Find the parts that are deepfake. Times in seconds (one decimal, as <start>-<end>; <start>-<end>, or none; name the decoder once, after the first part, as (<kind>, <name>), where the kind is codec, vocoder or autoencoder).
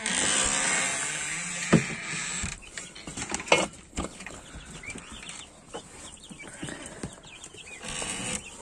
3.9-4.5 (codec, HILCodec)